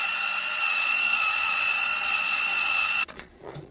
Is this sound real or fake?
fake